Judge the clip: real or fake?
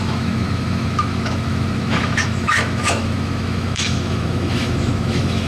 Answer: fake